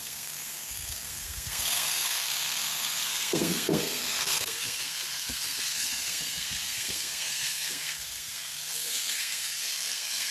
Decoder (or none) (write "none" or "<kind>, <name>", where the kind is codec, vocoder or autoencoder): codec, SNAC